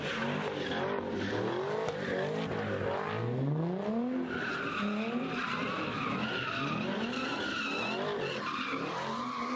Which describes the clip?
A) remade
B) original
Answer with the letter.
B